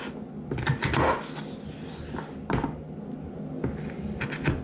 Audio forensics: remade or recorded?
recorded